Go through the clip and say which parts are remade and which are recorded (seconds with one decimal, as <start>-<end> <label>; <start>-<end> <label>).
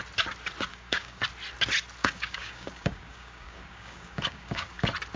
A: 0.0-0.7 recorded; 0.7-1.2 remade; 1.2-2.0 recorded; 2.0-4.8 remade; 4.8-5.2 recorded